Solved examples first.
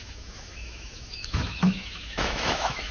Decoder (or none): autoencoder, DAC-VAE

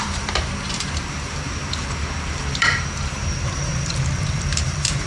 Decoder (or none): vocoder, BigVGAN v2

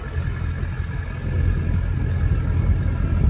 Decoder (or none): none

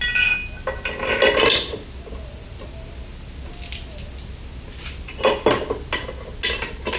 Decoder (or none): none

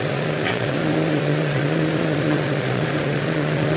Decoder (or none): vocoder, Vocos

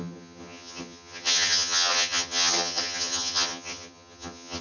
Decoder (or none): vocoder, HiFi-GAN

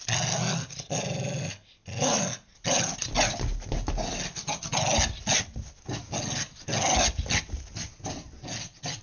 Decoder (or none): none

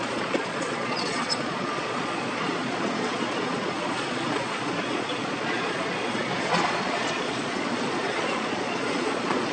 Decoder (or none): vocoder, Vocos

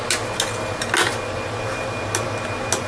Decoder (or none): none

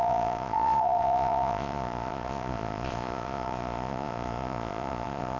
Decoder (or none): vocoder, Vocos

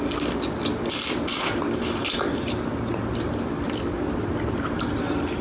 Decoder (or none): none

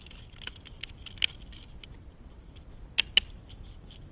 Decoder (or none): none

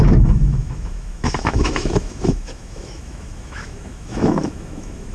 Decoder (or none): autoencoder, DAC-VAE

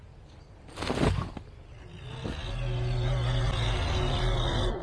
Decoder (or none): none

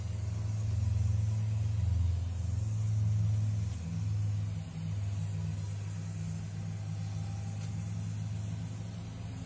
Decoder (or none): none